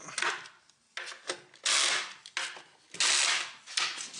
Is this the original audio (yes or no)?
yes